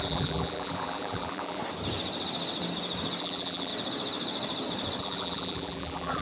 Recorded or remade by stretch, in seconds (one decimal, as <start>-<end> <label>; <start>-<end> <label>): 0.0-1.6 remade; 1.6-3.2 recorded; 3.2-3.7 remade; 3.7-5.0 recorded; 5.0-6.2 remade